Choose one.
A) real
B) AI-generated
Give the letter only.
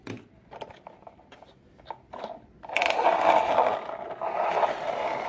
A